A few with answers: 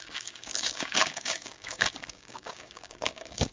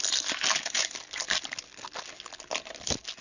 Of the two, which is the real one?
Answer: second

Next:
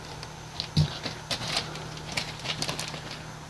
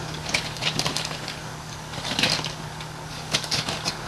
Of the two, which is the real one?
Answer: first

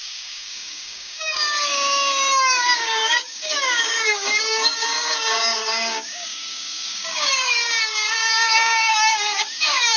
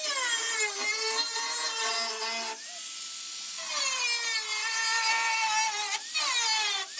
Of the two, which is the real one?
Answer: second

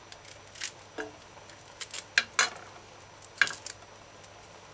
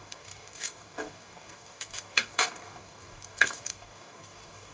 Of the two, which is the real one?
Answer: first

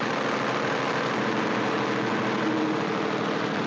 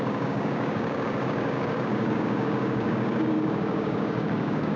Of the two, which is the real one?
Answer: first